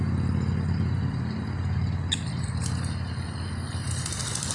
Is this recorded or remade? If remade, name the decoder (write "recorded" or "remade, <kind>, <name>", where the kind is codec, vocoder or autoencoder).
recorded